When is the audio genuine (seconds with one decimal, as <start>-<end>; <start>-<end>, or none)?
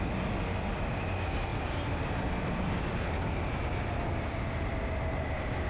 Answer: 0.0-1.5; 2.8-5.7